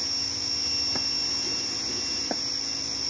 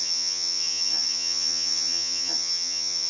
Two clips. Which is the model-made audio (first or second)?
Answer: second